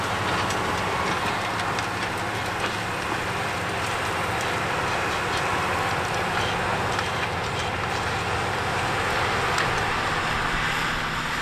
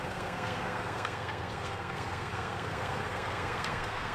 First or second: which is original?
first